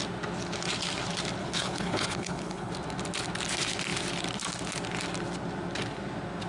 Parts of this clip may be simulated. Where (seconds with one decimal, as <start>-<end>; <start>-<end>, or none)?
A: 1.4-2.7